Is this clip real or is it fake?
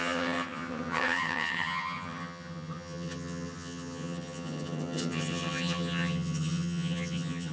fake